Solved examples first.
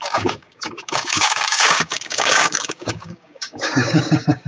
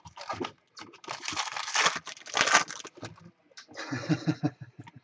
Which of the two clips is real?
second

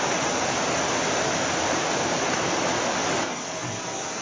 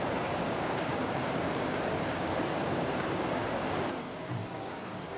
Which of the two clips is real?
first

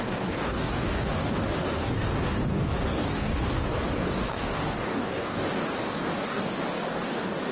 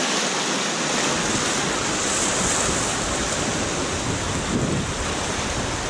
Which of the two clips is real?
second